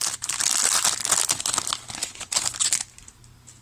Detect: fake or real real